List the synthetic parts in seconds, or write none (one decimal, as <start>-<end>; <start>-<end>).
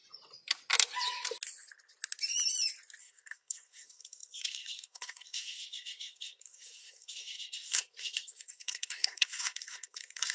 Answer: 3.0-10.3